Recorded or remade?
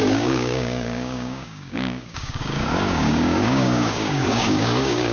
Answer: remade